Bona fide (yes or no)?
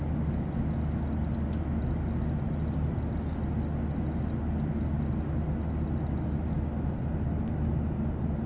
yes